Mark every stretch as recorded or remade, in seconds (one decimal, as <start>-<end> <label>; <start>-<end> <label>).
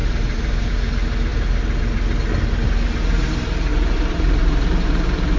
0.0-0.7 remade; 0.7-3.7 recorded; 3.7-5.4 remade